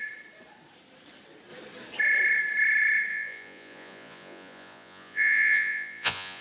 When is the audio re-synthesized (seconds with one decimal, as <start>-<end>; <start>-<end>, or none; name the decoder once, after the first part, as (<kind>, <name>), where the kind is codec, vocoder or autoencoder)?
3.1-6.4 (vocoder, Vocos)